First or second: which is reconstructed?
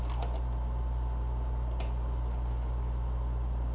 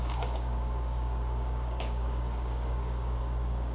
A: second